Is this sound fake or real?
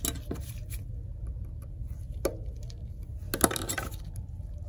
real